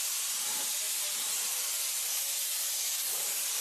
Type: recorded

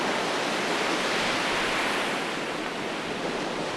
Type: recorded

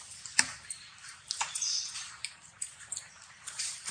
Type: remade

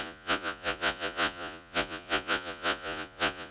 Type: remade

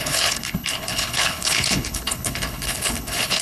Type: remade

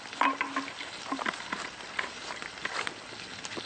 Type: recorded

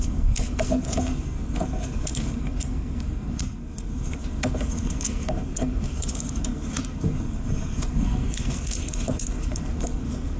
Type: remade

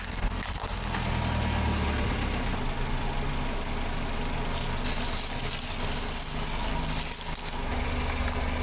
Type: recorded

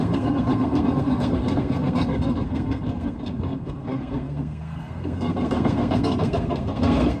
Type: remade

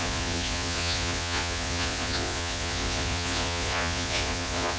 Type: remade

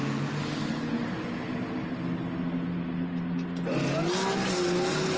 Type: recorded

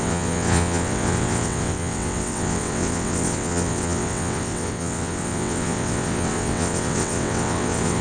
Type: remade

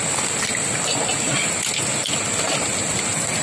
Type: recorded